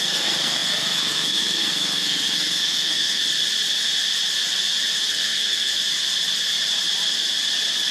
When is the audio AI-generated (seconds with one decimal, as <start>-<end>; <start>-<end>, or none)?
0.0-3.2; 5.1-5.7